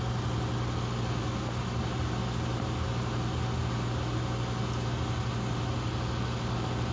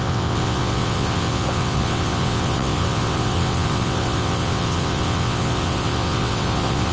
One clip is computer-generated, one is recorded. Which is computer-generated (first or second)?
second